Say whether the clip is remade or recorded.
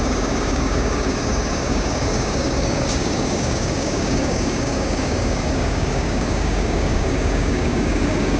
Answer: remade